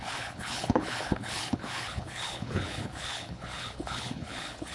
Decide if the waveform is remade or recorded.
remade